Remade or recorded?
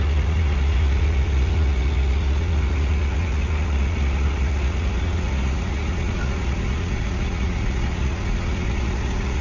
remade